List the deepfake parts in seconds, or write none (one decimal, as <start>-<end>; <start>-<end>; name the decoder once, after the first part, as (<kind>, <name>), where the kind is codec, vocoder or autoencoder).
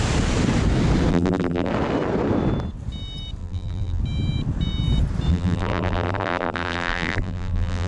1.1-1.7 (vocoder, BigVGAN v2); 3.4-4.0; 5.3-7.9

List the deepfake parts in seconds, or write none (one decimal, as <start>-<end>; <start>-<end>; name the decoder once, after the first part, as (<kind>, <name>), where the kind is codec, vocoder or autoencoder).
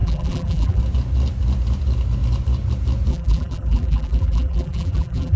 0.0-0.8 (vocoder, BigVGAN v2); 3.1-5.4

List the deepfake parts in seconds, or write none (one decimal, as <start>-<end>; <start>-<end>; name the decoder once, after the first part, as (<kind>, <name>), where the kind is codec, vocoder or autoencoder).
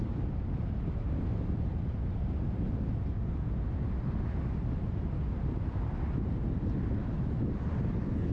7.0-7.5 (autoencoder, DAC-VAE)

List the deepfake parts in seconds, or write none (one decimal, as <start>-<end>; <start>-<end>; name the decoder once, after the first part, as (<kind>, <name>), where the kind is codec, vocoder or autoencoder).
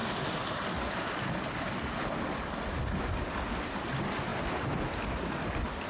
0.0-4.3 (vocoder, BigVGAN v2); 5.5-5.9